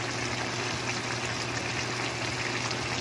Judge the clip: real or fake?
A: real